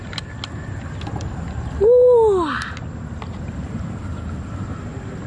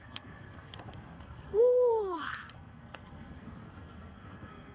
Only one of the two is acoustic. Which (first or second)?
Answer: first